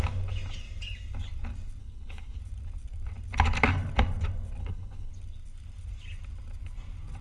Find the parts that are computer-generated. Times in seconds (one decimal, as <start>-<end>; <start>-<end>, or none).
1.8-2.4; 4.6-5.1